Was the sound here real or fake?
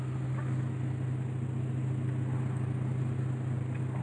real